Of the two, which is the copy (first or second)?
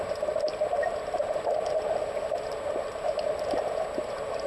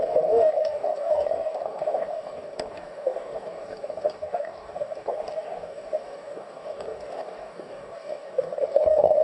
second